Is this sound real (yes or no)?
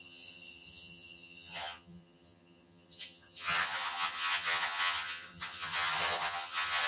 no